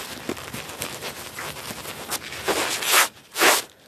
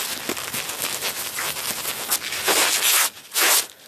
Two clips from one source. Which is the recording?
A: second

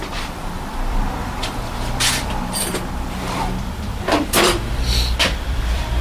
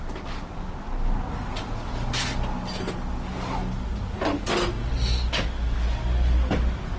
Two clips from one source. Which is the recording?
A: second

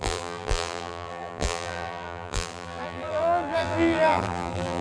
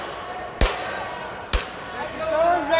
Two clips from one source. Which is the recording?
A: second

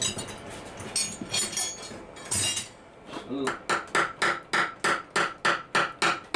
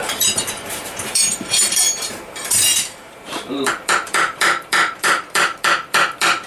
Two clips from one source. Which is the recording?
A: first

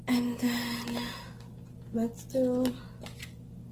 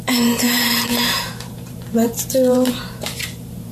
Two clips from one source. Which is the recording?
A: first